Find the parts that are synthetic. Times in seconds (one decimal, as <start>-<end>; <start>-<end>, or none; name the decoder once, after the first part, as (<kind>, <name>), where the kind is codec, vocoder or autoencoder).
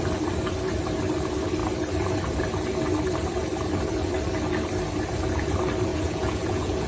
5.9-6.9 (vocoder, Vocos)